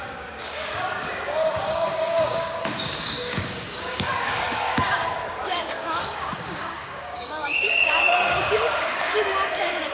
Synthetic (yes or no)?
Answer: yes